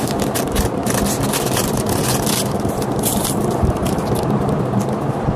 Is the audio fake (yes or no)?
yes